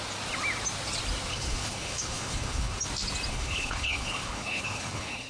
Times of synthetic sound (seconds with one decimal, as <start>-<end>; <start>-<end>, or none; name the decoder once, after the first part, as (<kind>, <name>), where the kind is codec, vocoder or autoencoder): 1.3-2.8 (codec, HILCodec); 3.3-5.3